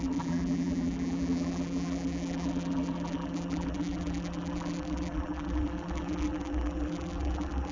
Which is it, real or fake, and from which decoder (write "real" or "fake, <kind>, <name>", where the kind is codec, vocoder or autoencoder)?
fake, vocoder, BigVGAN v2